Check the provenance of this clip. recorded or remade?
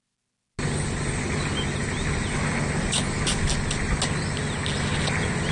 recorded